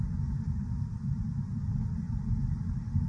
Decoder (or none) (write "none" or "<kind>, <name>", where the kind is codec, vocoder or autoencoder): none